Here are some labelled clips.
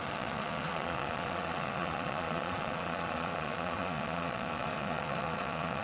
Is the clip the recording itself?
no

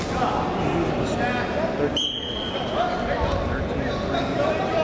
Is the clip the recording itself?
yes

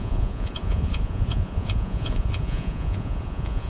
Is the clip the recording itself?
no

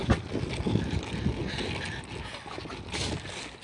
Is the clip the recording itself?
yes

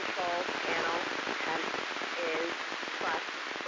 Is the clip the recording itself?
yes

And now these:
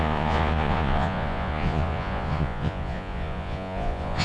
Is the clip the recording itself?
no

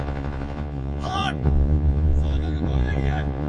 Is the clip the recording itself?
no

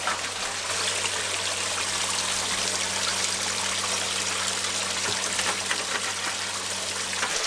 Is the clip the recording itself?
yes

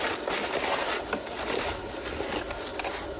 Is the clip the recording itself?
yes